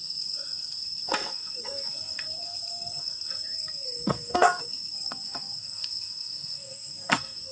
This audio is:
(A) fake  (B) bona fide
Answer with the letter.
A